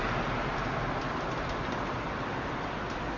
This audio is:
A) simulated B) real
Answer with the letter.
B